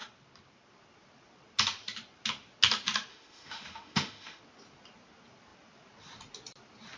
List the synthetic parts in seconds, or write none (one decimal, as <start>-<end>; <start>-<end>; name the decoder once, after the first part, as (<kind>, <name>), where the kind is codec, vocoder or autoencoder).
3.1-4.4 (autoencoder, DAC-VAE)